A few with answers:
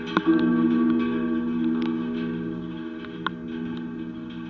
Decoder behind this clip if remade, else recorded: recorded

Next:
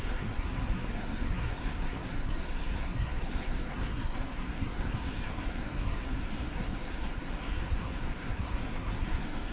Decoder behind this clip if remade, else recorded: remade, codec, SNAC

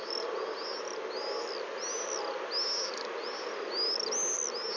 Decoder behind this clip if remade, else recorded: recorded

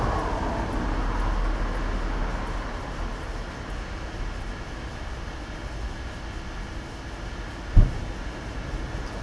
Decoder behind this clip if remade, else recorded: recorded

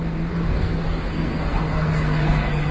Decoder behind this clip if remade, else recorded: remade, codec, SNAC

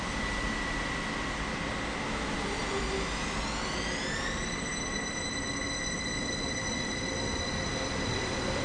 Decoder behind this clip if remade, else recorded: recorded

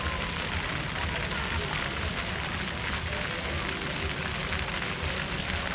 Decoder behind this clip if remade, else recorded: recorded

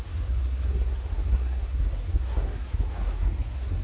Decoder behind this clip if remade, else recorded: remade, codec, SNAC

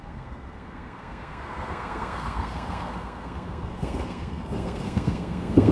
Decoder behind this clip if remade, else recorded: remade, codec, SNAC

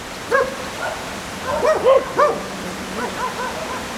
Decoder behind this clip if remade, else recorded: recorded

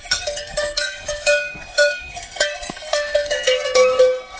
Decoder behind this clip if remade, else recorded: remade, codec, SNAC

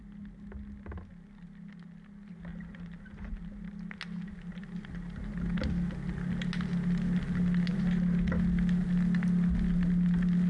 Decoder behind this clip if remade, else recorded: recorded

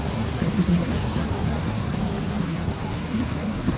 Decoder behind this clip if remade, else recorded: remade, codec, SNAC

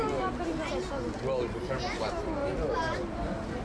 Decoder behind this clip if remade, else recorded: recorded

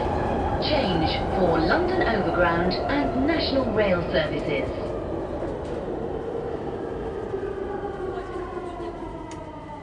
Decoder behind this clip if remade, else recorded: recorded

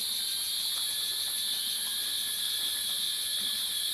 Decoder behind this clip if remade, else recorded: recorded